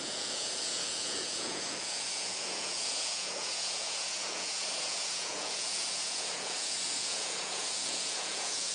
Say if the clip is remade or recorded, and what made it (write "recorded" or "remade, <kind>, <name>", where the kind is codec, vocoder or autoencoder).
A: remade, vocoder, Vocos